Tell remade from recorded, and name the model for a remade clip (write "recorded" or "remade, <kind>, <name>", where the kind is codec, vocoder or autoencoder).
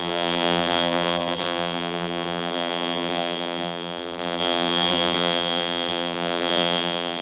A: remade, vocoder, BigVGAN v2